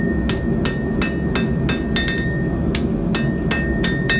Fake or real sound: real